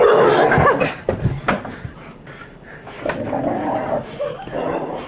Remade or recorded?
recorded